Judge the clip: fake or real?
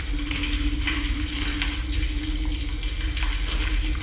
real